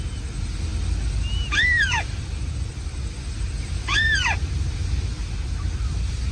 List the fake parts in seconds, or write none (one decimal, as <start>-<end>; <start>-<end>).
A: none